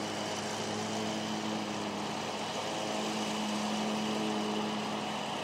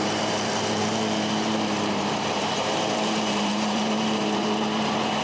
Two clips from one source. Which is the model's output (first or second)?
second